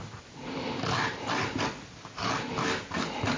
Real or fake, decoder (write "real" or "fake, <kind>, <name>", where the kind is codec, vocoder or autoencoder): real